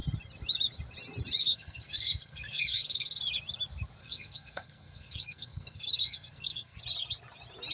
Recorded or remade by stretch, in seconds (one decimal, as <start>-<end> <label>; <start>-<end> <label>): 0.0-1.4 recorded; 1.4-3.2 remade; 3.2-4.0 recorded; 4.0-6.8 remade; 6.8-7.7 recorded